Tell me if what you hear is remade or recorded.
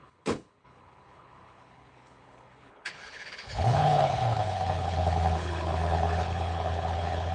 remade